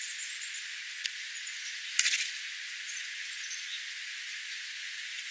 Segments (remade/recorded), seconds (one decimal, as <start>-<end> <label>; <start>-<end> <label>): 0.0-3.0 recorded; 3.0-3.8 remade; 3.8-5.3 recorded